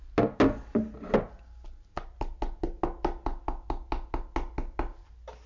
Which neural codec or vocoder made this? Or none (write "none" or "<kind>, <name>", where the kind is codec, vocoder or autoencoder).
none